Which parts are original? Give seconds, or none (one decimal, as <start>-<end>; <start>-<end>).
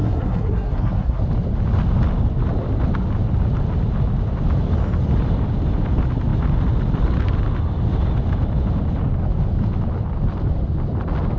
1.2-11.4